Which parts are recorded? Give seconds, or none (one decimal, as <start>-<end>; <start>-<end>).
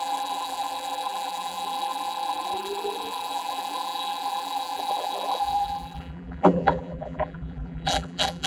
none